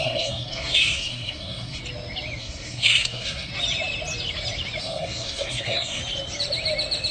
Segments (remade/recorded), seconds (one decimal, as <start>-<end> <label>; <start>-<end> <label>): 0.0-1.8 remade; 1.8-2.4 recorded; 2.4-3.5 remade; 3.5-4.8 recorded; 4.8-6.0 remade; 6.0-7.1 recorded